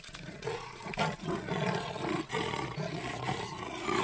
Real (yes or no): no